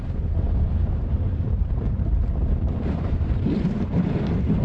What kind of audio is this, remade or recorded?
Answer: remade